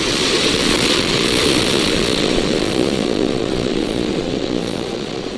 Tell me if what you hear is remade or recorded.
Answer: remade